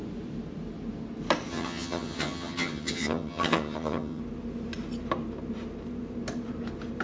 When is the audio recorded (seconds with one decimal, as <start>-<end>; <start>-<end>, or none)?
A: 0.0-1.5; 4.2-7.0